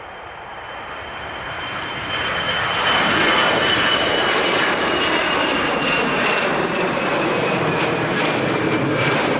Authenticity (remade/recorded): remade